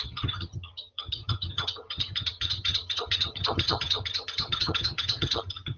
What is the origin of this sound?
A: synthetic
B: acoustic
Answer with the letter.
A